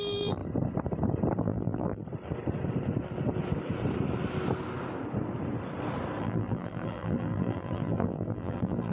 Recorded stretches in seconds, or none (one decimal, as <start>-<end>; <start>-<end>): 0.4-1.4; 2.0-6.2